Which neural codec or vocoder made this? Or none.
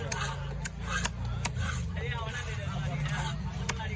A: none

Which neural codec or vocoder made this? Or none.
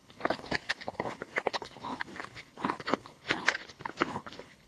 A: codec, HILCodec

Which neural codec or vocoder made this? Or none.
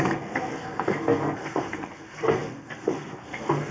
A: codec, SNAC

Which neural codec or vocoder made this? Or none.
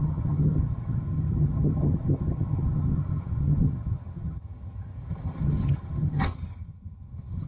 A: vocoder, HiFi-GAN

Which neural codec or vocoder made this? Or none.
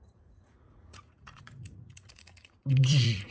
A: vocoder, Vocos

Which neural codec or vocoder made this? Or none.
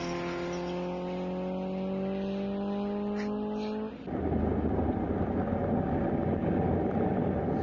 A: none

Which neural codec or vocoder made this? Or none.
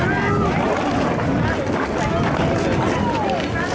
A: none